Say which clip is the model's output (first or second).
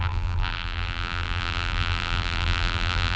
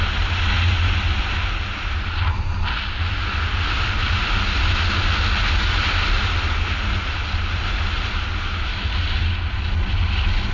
first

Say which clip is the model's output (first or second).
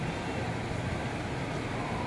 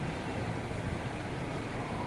second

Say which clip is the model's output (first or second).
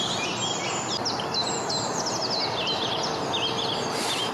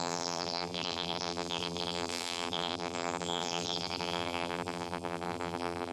second